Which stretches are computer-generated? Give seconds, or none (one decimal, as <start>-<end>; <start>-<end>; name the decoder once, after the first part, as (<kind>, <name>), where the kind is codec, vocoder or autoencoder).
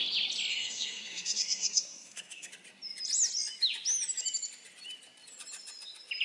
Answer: 0.5-2.5 (codec, SNAC)